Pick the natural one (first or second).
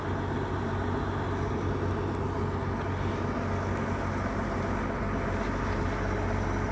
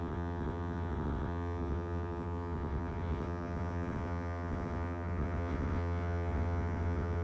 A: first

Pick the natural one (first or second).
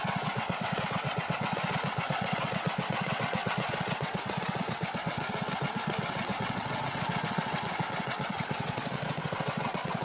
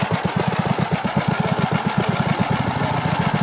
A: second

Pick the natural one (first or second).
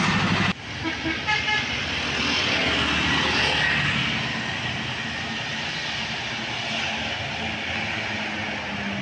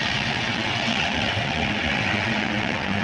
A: first